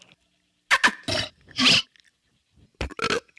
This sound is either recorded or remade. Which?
recorded